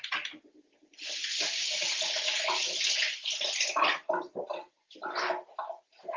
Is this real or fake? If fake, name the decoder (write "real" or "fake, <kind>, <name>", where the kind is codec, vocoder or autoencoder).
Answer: real